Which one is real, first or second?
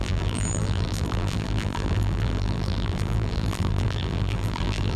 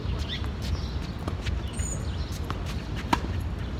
second